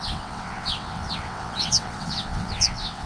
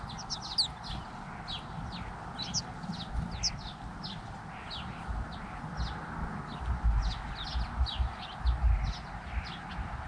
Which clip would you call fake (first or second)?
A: first